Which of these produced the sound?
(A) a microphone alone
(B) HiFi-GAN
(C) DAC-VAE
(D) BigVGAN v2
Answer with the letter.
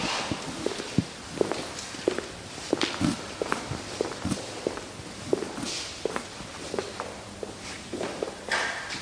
D